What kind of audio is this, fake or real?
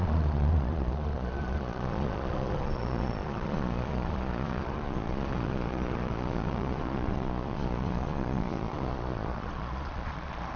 fake